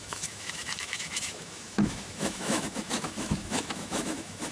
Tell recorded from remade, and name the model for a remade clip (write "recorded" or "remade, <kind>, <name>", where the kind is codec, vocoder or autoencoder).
remade, autoencoder, DAC-VAE